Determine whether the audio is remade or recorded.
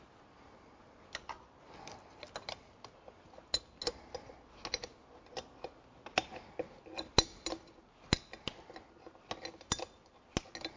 recorded